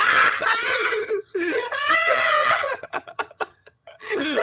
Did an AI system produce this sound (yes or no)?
yes